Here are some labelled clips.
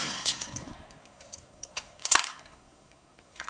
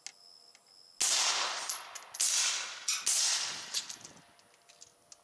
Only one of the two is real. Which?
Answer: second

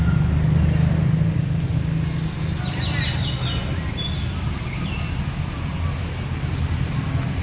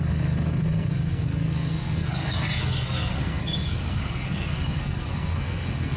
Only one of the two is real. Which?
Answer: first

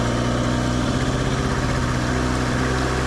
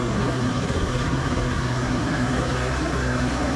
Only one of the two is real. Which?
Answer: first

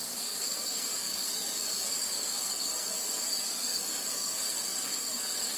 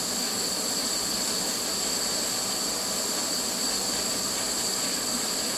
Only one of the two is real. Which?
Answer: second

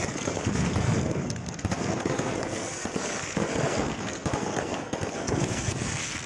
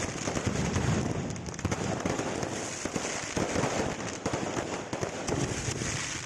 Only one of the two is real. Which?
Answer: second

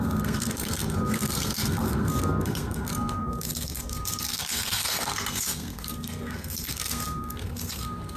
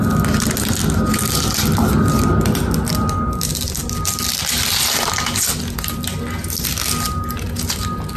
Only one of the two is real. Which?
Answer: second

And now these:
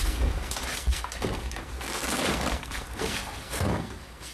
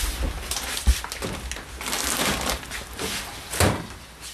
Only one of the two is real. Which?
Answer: second